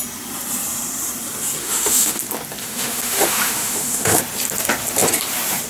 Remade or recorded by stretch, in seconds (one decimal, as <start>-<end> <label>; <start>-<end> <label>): 0.0-1.6 recorded; 1.6-2.2 remade; 2.2-2.6 recorded; 2.6-4.2 remade; 4.2-5.7 recorded